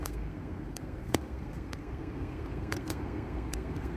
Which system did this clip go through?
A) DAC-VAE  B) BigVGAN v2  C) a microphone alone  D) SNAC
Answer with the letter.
D